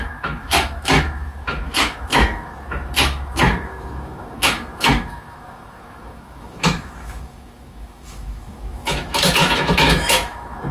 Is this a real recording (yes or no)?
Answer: no